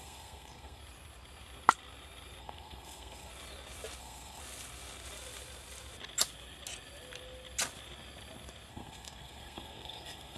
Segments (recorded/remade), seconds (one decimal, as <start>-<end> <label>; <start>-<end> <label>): 0.0-0.8 remade; 0.8-2.4 recorded; 2.4-3.3 remade; 3.3-4.0 recorded; 4.0-4.4 remade; 4.4-8.7 recorded; 8.7-10.4 remade